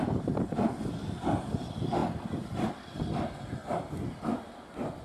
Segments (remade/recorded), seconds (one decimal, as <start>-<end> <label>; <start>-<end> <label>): 0.0-5.0 recorded